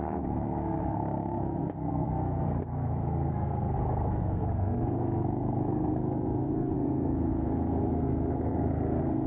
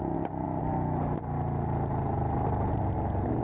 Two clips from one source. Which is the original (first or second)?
second